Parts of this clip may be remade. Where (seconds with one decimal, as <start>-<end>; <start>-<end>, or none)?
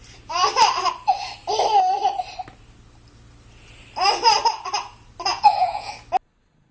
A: 5.3-5.9